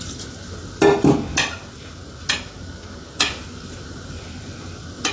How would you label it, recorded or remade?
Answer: recorded